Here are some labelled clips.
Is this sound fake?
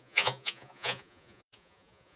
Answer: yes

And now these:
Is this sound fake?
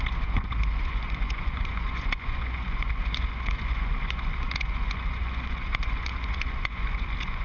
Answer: yes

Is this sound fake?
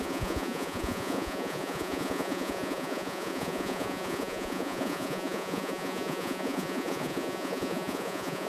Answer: yes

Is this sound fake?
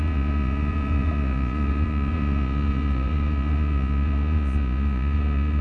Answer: yes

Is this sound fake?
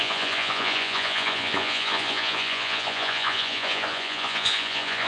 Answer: yes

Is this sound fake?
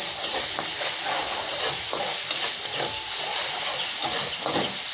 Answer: no